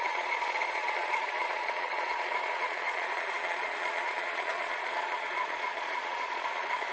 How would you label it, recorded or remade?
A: remade